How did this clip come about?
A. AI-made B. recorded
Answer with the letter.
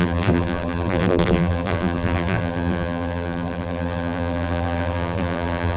A